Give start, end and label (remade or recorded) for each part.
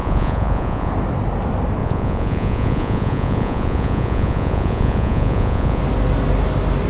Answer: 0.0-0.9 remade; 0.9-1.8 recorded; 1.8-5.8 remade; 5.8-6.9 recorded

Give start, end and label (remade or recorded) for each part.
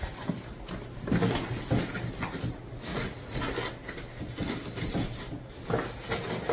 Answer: 0.0-2.9 recorded; 2.9-3.4 remade; 3.4-6.5 recorded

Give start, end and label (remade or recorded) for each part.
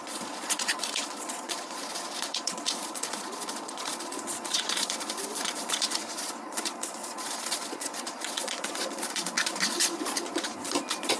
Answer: 0.0-11.2 remade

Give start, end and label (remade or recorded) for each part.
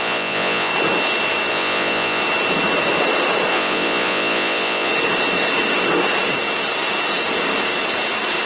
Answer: 0.0-0.7 remade; 0.7-1.5 recorded; 1.5-2.2 remade; 2.2-3.5 recorded; 3.5-4.9 remade; 4.9-8.5 recorded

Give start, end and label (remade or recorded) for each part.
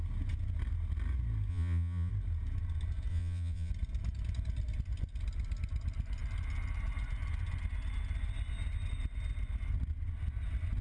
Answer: 0.0-1.5 recorded; 1.5-2.1 remade; 2.1-3.1 recorded; 3.1-3.7 remade; 3.7-10.8 recorded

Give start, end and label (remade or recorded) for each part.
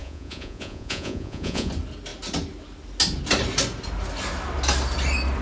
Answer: 0.0-1.7 remade; 1.7-5.4 recorded